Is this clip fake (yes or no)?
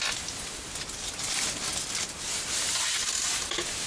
no